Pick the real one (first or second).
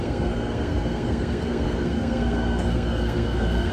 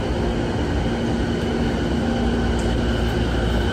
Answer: second